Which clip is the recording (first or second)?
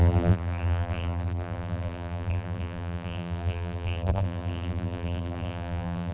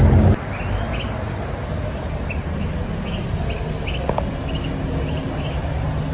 second